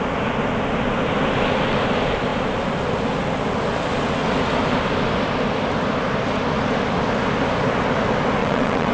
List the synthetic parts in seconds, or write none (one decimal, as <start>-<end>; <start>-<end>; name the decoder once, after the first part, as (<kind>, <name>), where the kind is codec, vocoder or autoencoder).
8.4-8.9 (vocoder, WaveNeXt)